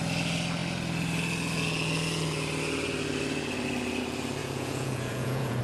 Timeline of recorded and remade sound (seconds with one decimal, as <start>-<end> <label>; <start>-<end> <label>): 0.0-4.4 recorded; 4.4-5.6 remade